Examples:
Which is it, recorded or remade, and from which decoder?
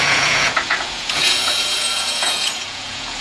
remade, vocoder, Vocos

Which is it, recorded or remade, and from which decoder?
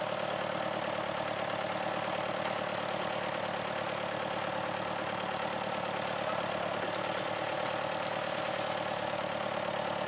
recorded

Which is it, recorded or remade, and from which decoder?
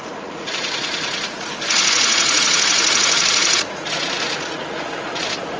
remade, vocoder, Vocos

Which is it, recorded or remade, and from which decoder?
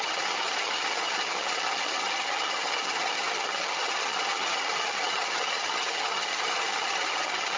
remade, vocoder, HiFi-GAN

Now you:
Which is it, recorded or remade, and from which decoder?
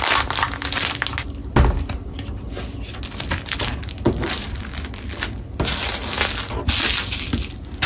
recorded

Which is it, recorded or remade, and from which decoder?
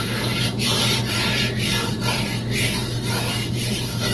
remade, vocoder, BigVGAN v2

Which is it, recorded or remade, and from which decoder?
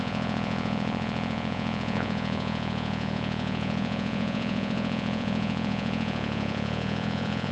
remade, vocoder, Vocos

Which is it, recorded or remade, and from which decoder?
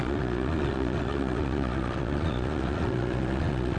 remade, vocoder, Vocos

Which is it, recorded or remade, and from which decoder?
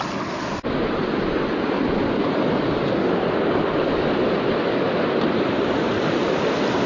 recorded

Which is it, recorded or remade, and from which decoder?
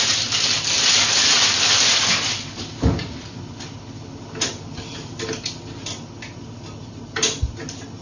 recorded